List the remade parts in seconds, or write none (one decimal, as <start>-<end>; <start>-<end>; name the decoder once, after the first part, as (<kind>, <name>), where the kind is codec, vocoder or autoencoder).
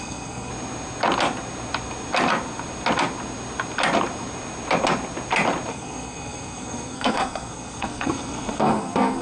0.0-0.5 (codec, SNAC); 5.7-9.2